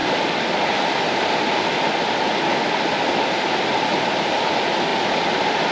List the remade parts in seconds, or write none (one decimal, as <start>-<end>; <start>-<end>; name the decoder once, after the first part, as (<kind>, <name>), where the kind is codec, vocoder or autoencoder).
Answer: none